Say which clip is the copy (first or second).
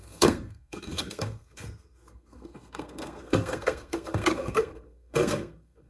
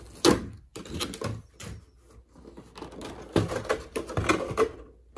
first